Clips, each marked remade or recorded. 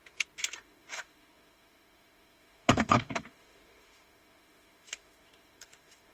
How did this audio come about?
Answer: remade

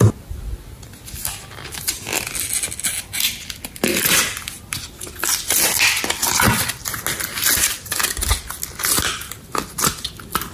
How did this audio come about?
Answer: recorded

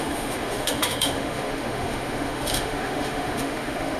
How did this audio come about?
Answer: remade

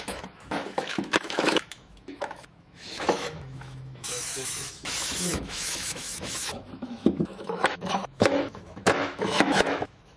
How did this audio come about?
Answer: remade